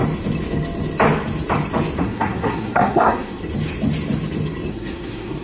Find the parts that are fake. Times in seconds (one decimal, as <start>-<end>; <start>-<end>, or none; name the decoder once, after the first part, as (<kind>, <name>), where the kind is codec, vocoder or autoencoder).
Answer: 2.0-3.4 (codec, SNAC); 4.7-5.4